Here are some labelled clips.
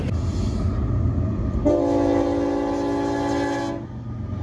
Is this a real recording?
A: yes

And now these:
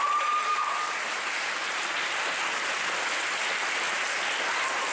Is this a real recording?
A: yes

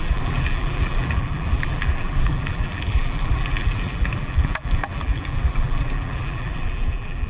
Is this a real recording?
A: no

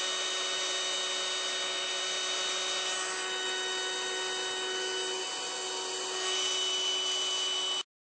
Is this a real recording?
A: yes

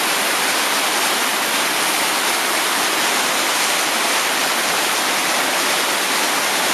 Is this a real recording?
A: no